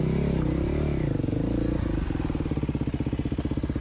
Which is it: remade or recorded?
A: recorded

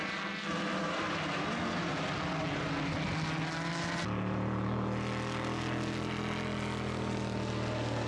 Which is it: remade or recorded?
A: recorded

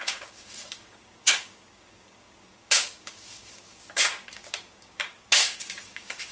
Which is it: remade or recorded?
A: remade